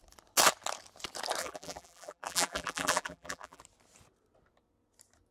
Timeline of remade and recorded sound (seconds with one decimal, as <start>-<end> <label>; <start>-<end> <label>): 0.0-1.4 recorded; 1.4-3.6 remade; 3.6-5.3 recorded